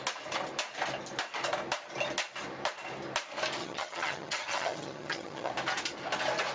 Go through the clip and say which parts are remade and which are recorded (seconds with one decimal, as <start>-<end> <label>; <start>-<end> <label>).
0.0-3.6 recorded; 3.6-5.5 remade; 5.5-6.5 recorded